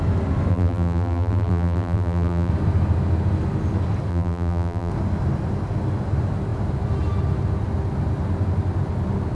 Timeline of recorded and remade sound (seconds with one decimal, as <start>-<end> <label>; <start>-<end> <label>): 0.0-0.5 recorded; 0.5-2.5 remade; 2.5-4.1 recorded; 4.1-4.9 remade; 4.9-9.3 recorded